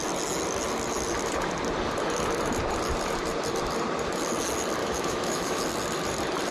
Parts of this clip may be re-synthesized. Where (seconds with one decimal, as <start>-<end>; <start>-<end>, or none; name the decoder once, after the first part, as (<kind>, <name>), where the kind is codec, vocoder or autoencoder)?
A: 4.8-5.6 (autoencoder, DAC-VAE)